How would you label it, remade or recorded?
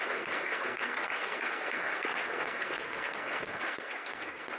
remade